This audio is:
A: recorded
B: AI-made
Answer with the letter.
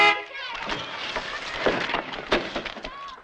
A